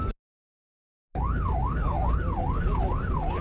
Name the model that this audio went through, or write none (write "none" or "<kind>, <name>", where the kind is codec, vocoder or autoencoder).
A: none